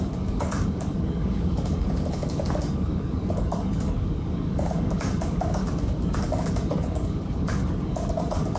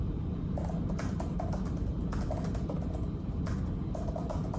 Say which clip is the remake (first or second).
first